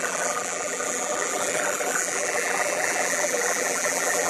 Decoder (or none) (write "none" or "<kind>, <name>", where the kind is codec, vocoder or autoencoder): vocoder, BigVGAN v2